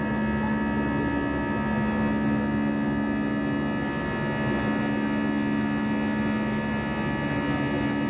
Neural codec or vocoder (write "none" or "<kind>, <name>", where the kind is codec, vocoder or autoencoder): none